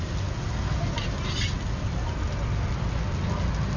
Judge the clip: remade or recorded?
recorded